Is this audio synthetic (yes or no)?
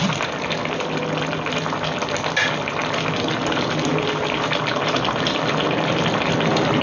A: no